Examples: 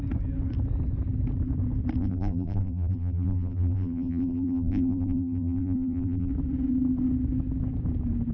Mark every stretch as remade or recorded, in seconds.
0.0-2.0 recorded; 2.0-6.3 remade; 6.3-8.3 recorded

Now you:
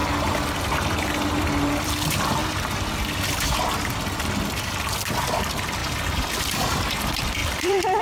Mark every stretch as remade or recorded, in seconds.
0.0-0.6 recorded; 0.6-2.4 remade; 2.4-4.4 recorded; 4.4-5.8 remade; 5.8-6.9 recorded; 6.9-8.0 remade

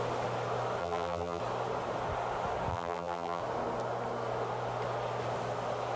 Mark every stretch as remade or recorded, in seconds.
0.0-0.8 recorded; 0.8-1.4 remade; 1.4-2.7 recorded; 2.7-3.4 remade; 3.4-6.0 recorded

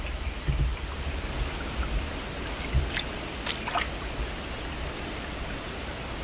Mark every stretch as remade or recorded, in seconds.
0.0-6.2 recorded

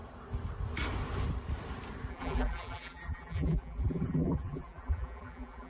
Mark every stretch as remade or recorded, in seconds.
0.0-2.1 recorded; 2.1-5.7 remade

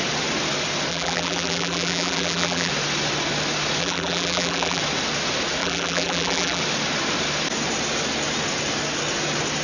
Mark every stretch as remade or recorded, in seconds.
0.0-0.9 recorded; 0.9-2.7 remade; 2.7-3.8 recorded; 3.8-4.8 remade; 4.8-5.6 recorded; 5.6-6.6 remade; 6.6-9.6 recorded

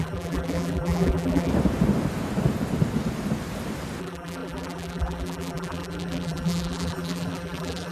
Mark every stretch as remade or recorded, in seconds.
0.0-1.5 remade; 1.5-4.0 recorded; 4.0-7.9 remade

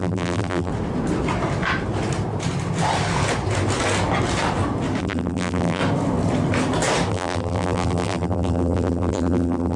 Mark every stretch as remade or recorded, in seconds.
0.0-0.7 remade; 0.7-5.0 recorded; 5.0-5.8 remade; 5.8-7.1 recorded; 7.1-9.8 remade